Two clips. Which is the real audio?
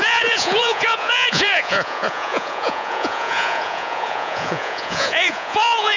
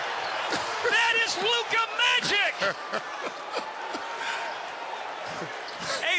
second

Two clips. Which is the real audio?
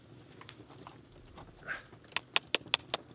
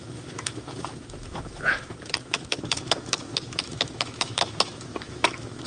first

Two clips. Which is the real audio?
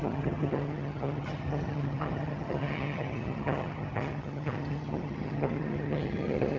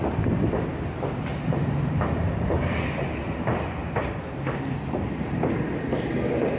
second